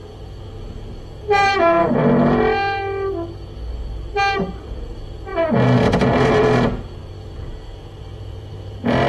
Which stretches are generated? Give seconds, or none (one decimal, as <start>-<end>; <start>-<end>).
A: 0.0-2.0; 4.6-5.3; 5.8-9.1